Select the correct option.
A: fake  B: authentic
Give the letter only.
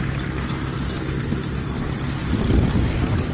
B